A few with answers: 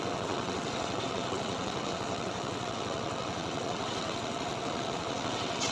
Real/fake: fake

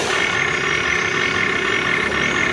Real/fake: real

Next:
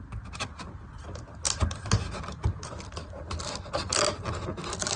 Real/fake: real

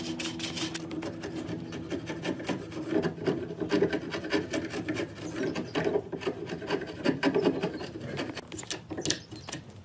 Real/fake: real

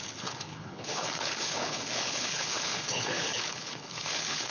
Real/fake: fake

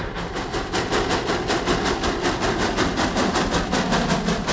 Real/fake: real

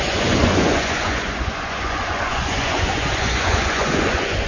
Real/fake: fake